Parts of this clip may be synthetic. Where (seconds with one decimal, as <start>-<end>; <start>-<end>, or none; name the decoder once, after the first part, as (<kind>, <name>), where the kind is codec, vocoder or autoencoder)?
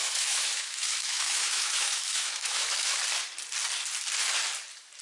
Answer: 0.0-3.0 (autoencoder, DAC-VAE)